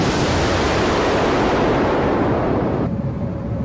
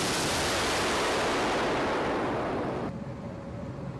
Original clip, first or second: second